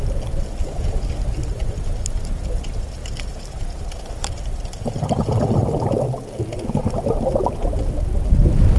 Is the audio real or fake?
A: real